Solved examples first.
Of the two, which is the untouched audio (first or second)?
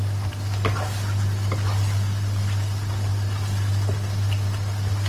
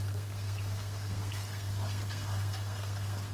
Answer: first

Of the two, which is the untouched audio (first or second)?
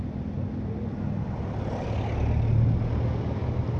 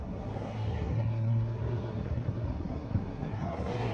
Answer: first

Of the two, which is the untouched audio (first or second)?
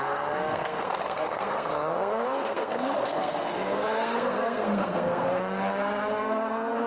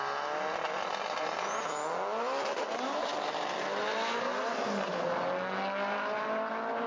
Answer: second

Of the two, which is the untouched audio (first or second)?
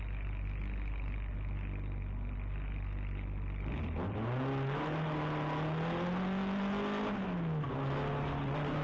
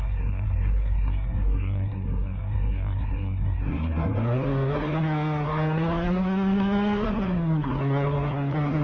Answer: first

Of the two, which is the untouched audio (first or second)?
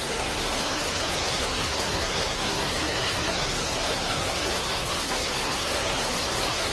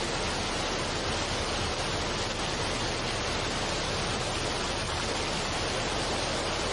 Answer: second